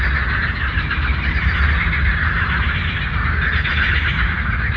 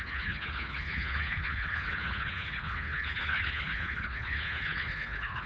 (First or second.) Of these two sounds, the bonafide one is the first